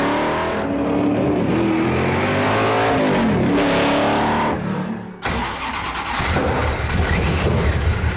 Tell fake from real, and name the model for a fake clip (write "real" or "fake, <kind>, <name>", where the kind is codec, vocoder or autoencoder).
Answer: real